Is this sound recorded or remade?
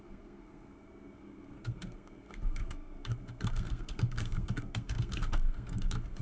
remade